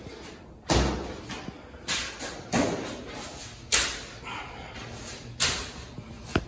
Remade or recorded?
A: recorded